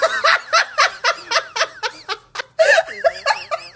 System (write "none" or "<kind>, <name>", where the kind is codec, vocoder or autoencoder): none